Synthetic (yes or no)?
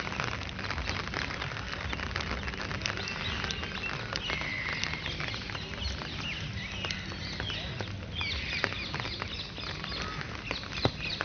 no